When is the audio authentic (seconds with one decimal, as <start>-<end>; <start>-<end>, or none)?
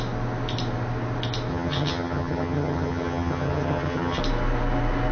0.0-1.5; 4.2-5.1